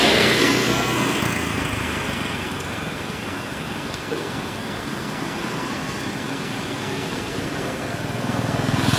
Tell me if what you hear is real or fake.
fake